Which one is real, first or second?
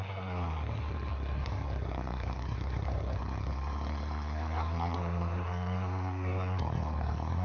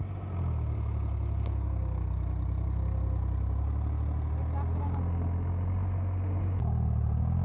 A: second